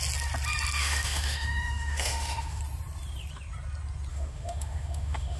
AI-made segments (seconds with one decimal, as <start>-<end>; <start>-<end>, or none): 0.8-2.6; 4.1-5.4